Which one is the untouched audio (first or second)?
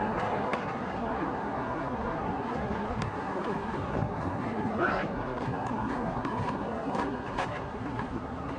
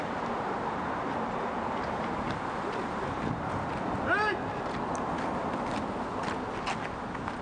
second